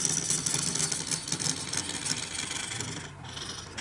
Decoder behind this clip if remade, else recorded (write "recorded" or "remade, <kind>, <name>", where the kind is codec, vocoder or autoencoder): recorded